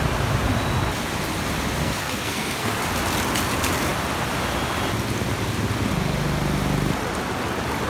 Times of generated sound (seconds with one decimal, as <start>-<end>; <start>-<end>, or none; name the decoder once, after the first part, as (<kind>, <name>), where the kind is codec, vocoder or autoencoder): 1.8-2.8 (codec, SNAC)

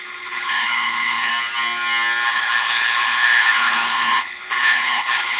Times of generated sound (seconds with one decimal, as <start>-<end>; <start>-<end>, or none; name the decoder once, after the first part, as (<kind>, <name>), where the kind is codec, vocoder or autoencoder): 0.0-1.3 (codec, HILCodec); 2.3-5.4

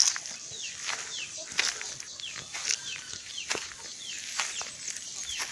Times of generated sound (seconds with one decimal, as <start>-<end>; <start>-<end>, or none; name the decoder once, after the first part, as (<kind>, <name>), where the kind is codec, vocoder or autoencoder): 2.8-3.3 (vocoder, BigVGAN v2)

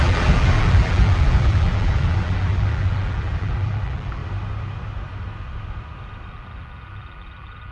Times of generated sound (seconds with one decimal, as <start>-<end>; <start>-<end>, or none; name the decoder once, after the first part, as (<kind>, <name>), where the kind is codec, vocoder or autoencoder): 0.0-4.2 (vocoder, BigVGAN v2); 6.3-7.7